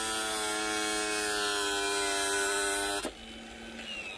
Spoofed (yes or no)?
no